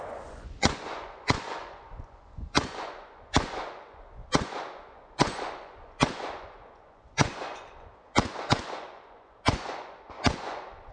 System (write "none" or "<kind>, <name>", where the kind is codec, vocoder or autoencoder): vocoder, Vocos